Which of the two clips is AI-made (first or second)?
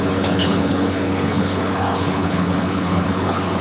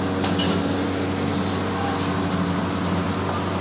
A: first